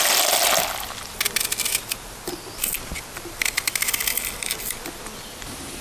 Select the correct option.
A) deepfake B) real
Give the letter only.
B